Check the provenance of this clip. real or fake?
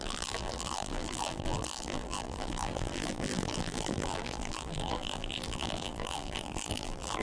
fake